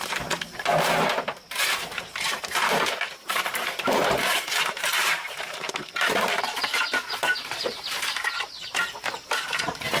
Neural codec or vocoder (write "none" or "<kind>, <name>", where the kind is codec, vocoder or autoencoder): vocoder, BigVGAN v2